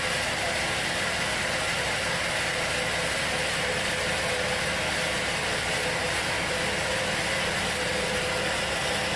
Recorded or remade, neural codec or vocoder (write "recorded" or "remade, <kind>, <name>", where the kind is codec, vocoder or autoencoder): recorded